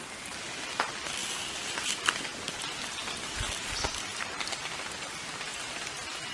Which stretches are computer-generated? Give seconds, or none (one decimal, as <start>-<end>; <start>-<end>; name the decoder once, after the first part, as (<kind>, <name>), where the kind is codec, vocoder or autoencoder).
1.2-2.3 (vocoder, BigVGAN v2)